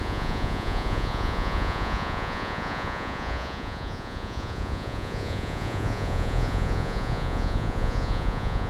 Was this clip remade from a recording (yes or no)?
yes